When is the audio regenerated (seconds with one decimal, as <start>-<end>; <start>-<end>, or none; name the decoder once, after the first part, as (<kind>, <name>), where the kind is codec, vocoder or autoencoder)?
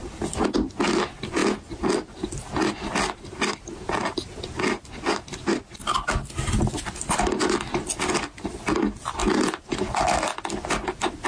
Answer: none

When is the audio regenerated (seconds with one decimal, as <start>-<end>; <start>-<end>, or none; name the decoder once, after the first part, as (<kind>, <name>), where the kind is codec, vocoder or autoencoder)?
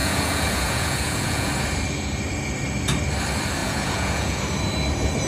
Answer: 0.0-1.5 (vocoder, Vocos); 3.6-4.4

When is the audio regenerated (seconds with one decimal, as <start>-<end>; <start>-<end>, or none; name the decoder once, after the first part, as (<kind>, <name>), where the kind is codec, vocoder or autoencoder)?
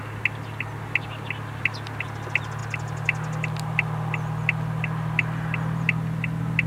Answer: none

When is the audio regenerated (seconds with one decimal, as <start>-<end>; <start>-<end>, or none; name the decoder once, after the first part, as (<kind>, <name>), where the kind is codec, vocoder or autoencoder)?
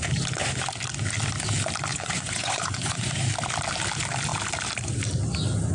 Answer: 1.9-3.1 (vocoder, Vocos)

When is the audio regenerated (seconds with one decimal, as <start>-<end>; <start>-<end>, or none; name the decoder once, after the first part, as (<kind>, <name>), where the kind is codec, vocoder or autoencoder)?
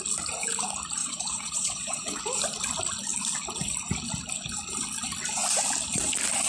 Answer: 1.0-2.2 (vocoder, Vocos)